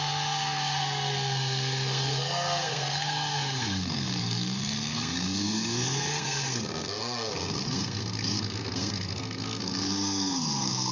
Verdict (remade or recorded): remade